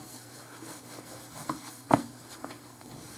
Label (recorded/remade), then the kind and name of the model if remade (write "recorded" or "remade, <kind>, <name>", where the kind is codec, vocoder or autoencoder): remade, codec, SNAC